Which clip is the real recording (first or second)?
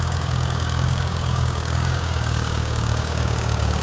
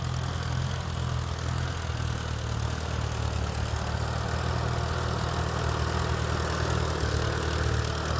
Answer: second